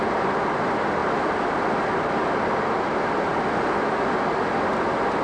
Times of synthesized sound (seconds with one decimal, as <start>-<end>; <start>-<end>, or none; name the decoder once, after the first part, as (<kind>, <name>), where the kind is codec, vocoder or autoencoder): none